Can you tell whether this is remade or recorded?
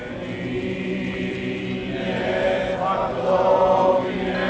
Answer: recorded